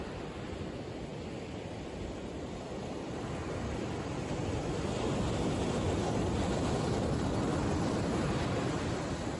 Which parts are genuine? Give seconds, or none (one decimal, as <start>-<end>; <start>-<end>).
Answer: 0.0-7.5; 8.3-9.4